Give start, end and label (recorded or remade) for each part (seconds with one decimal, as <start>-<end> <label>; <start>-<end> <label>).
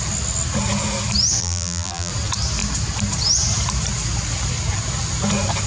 0.0-1.4 recorded; 1.4-2.1 remade; 2.1-5.7 recorded